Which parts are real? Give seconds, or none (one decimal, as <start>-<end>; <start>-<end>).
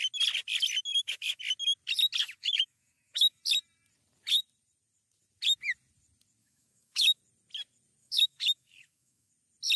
0.0-0.9; 1.4-2.2; 3.4-6.4; 7.2-8.0; 9.3-9.8